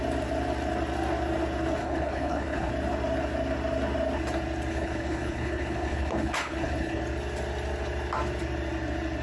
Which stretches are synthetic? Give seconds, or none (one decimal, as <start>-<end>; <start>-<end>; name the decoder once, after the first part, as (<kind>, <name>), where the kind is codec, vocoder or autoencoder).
1.8-2.7 (codec, HILCodec); 4.7-7.0